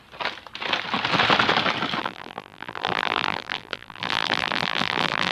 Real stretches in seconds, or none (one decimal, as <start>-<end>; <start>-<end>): 0.0-2.0

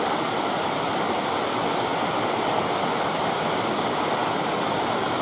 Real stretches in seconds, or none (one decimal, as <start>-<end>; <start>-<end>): 0.0-1.9; 2.4-5.2